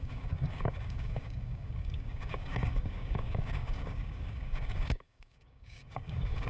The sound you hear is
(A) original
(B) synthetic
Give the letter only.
B